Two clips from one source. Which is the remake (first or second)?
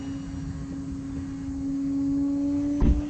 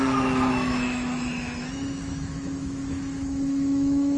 second